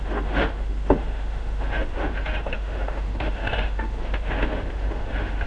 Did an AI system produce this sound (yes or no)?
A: yes